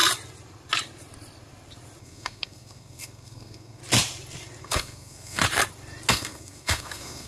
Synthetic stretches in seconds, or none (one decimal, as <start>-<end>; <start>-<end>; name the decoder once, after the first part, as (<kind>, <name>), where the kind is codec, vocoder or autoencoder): 2.0-3.8 (codec, SNAC); 4.6-5.4; 6.1-7.3